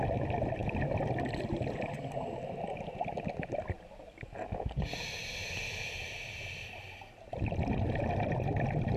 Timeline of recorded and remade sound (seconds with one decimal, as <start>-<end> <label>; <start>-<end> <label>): 0.0-9.0 recorded